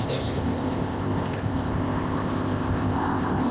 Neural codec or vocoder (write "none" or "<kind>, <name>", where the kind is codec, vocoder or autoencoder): codec, ZipCodec